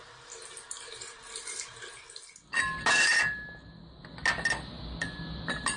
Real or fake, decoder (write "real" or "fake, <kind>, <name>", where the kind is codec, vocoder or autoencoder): real